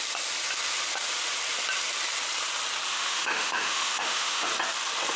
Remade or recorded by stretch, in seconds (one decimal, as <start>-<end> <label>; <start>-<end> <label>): 0.0-2.9 recorded; 2.9-4.5 remade; 4.5-5.2 recorded